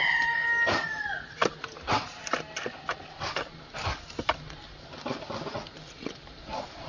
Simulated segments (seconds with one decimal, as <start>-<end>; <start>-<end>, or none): none